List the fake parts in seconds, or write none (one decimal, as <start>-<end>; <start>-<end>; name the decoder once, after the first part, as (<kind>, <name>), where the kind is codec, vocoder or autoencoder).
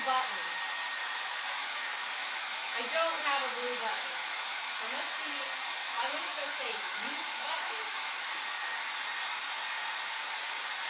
1.0-2.8 (autoencoder, DAC-VAE); 3.8-5.1; 5.8-8.3